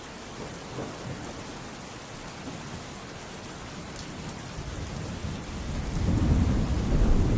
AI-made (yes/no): no